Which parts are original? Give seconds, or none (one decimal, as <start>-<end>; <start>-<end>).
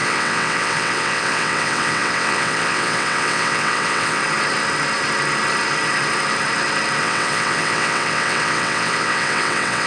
4.2-7.0